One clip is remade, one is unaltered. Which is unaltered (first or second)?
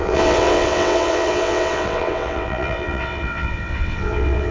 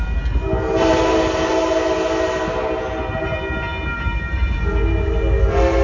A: second